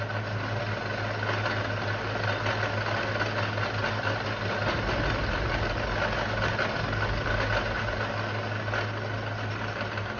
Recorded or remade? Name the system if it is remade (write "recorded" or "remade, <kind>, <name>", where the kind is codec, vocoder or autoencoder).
recorded